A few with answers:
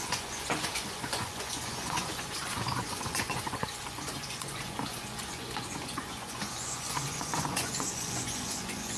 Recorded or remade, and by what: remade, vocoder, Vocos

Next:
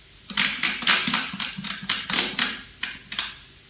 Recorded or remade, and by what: recorded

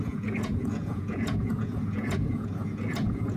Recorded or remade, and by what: remade, vocoder, Vocos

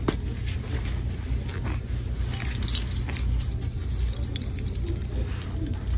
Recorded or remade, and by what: recorded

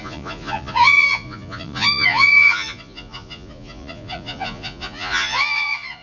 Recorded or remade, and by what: remade, vocoder, Vocos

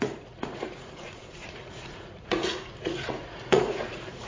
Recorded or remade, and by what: remade, vocoder, Vocos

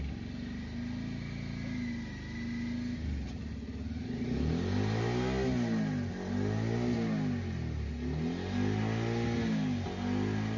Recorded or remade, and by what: recorded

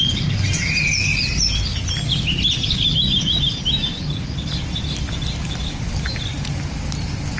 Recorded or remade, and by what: recorded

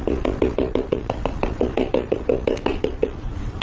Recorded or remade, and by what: remade, vocoder, Vocos